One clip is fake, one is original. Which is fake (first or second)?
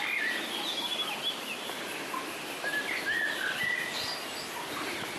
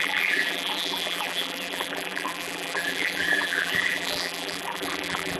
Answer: second